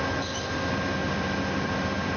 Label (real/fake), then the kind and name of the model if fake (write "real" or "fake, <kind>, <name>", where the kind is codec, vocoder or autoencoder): real